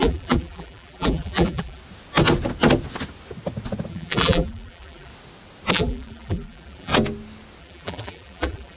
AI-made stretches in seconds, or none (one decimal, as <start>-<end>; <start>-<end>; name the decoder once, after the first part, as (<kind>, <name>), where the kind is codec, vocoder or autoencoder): 0.0-1.8 (vocoder, BigVGAN v2); 3.9-5.1; 5.7-6.9; 7.6-8.8